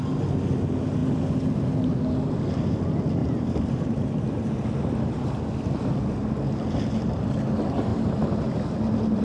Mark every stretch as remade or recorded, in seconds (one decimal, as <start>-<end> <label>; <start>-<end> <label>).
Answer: 0.0-3.2 recorded; 3.2-4.1 remade; 4.1-7.9 recorded; 7.9-8.6 remade; 8.6-9.2 recorded